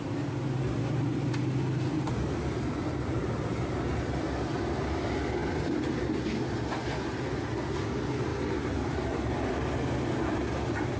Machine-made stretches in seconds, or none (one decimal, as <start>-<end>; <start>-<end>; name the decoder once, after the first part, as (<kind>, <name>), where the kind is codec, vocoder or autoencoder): none